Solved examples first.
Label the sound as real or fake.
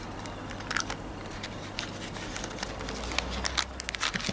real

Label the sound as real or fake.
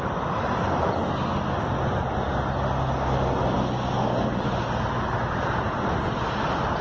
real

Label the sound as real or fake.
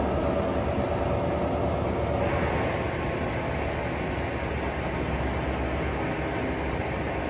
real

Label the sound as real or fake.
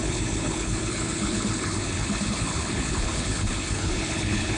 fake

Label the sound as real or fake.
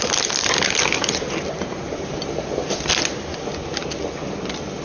real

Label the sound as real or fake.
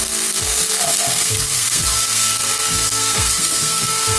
fake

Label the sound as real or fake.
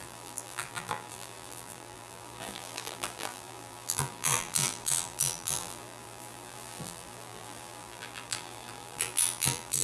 fake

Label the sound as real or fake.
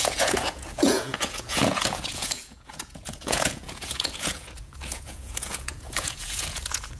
fake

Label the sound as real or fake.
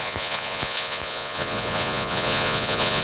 fake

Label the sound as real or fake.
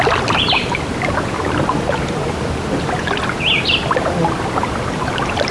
real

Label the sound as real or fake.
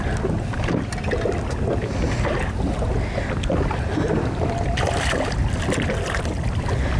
real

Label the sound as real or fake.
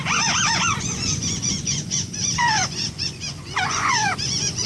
fake